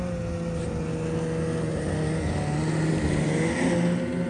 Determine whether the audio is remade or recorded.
recorded